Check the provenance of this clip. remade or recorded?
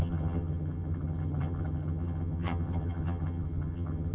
remade